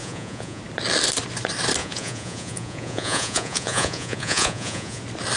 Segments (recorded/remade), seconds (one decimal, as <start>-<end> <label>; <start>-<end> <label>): 0.0-0.6 remade; 0.6-1.8 recorded; 1.8-5.0 remade; 5.0-5.4 recorded